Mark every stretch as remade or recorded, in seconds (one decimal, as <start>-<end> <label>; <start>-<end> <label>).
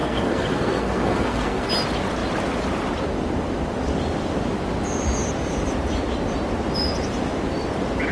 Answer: 0.0-1.7 remade; 1.7-8.1 recorded